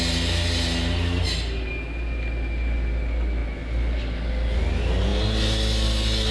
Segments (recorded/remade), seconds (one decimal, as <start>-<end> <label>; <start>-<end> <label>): 0.0-6.3 recorded